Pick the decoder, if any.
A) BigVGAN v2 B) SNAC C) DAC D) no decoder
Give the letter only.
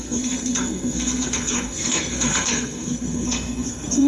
B